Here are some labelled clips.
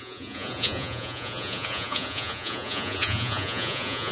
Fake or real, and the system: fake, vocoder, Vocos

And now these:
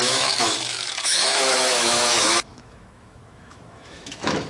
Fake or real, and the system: fake, autoencoder, DAC-VAE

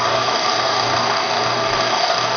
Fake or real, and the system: fake, codec, DAC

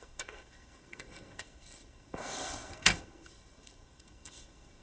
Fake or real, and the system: fake, codec, SNAC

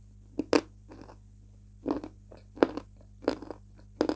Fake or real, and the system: real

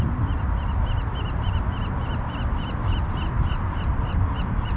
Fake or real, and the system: real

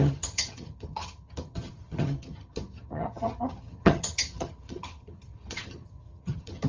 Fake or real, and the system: fake, vocoder, HiFi-GAN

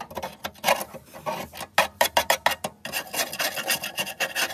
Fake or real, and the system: real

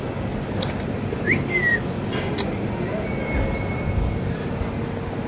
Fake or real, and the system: real